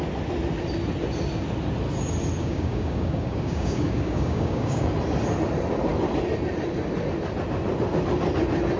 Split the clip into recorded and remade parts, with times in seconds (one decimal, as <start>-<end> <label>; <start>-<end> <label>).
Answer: 0.0-2.4 recorded; 2.4-4.9 remade; 4.9-8.8 recorded